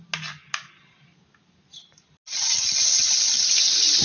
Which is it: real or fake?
real